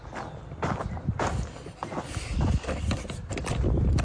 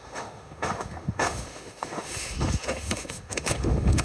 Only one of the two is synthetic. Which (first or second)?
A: second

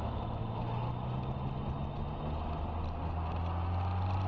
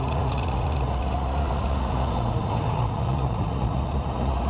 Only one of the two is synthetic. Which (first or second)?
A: second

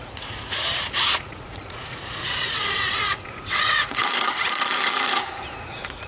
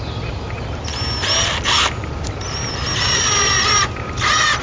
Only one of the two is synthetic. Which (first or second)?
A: first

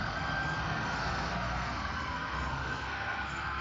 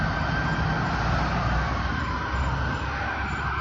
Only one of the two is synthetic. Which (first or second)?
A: first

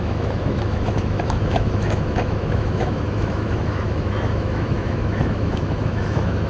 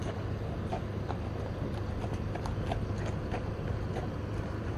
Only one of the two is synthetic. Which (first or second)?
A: first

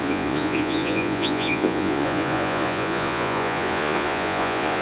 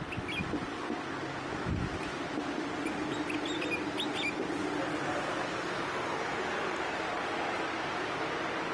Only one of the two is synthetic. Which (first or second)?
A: first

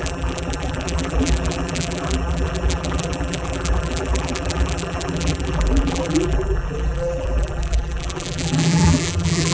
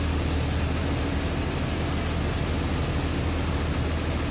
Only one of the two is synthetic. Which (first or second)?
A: first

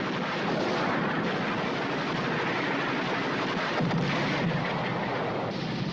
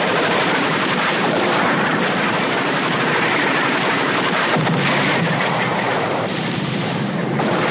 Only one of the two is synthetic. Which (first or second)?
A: second